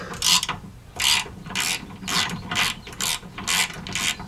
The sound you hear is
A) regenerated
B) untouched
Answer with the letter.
B